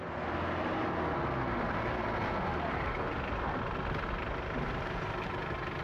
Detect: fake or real real